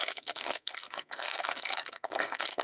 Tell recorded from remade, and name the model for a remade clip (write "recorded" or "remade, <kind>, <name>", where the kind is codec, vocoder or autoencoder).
remade, codec, SNAC